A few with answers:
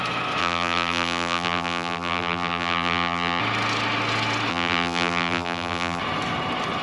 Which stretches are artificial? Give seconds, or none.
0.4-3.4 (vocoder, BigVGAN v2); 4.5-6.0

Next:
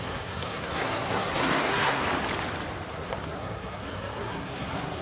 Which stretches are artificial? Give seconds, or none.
0.0-2.0 (codec, SNAC); 2.9-5.0

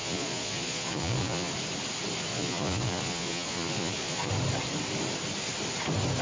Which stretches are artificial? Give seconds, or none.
0.0-1.5 (vocoder, Vocos); 2.3-4.3